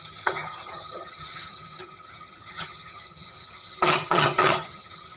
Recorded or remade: remade